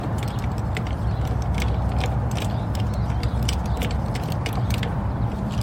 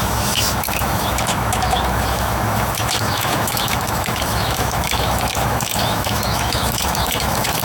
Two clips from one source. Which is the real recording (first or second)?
first